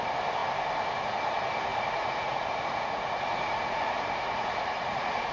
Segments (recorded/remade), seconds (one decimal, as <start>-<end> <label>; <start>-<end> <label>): 0.0-1.7 recorded; 1.7-5.3 remade